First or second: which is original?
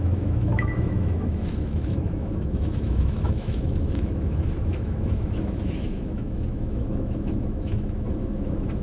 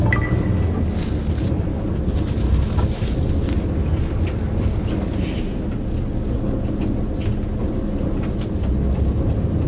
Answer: second